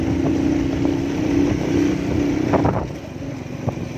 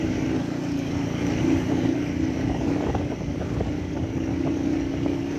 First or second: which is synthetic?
second